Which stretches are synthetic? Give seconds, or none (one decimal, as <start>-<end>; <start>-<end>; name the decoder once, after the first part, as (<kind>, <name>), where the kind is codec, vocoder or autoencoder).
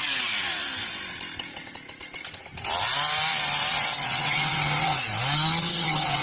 3.7-5.1 (vocoder, WaveNeXt); 5.6-6.2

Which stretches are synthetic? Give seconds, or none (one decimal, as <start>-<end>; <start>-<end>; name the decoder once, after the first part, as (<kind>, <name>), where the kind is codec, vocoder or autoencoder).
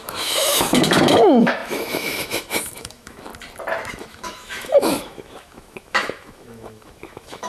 0.0-3.3 (autoencoder, DAC-VAE); 3.9-7.5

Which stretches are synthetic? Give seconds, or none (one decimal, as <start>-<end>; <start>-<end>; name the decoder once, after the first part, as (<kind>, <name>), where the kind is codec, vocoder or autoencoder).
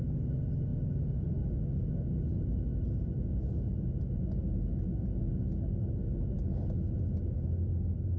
none